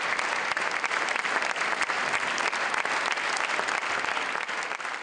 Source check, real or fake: real